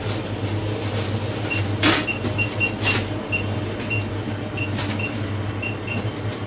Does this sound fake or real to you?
real